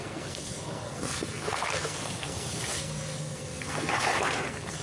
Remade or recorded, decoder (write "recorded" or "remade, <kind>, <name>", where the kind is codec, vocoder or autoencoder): remade, codec, SNAC